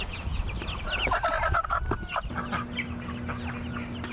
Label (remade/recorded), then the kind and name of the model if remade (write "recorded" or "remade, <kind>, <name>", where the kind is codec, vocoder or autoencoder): recorded